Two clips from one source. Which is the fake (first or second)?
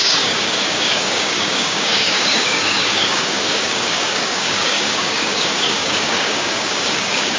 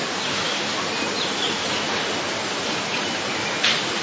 first